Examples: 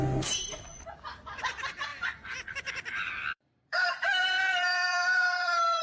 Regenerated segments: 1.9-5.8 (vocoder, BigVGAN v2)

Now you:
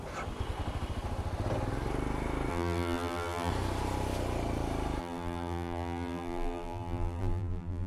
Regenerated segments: 2.5-3.5 (vocoder, BigVGAN v2); 5.0-7.9

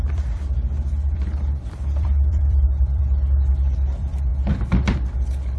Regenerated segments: 0.0-3.0 (vocoder, BigVGAN v2); 3.7-4.3

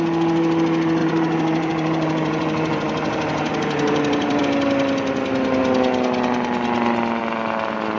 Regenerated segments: 1.0-4.4 (vocoder, BigVGAN v2)